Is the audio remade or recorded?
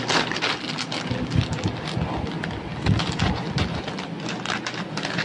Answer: recorded